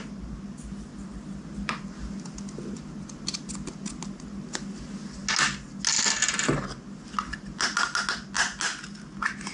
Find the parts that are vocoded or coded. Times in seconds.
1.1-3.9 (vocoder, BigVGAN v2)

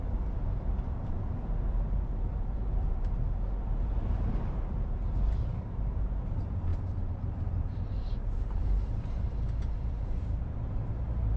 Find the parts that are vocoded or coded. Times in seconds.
0.0-11.4 (vocoder, BigVGAN v2)

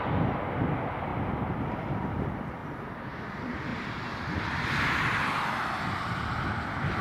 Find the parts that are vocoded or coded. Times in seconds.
1.1-1.9 (vocoder, BigVGAN v2); 3.7-4.7

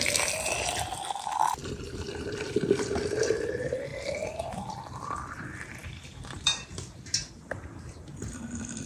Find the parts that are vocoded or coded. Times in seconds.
1.6-2.3 (vocoder, BigVGAN v2); 5.8-6.7

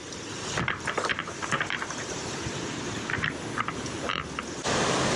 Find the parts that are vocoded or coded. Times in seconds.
1.1-4.2 (vocoder, BigVGAN v2)